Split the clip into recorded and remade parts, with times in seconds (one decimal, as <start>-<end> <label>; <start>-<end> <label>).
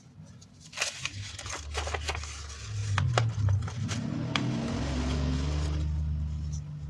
0.0-6.9 recorded